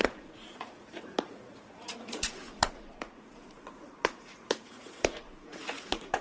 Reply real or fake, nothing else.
fake